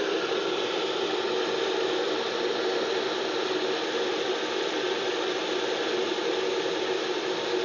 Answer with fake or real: real